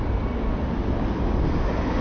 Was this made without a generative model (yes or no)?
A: yes